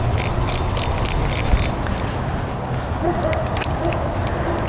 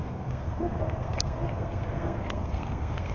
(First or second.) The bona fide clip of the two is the first